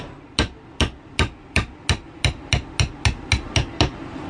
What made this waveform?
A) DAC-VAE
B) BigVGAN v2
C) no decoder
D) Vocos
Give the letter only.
C